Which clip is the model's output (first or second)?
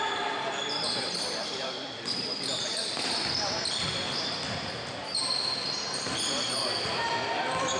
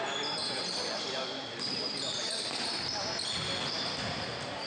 first